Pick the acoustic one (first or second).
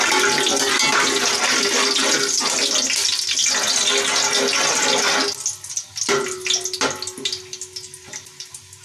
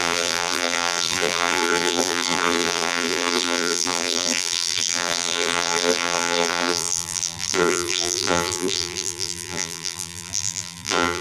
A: first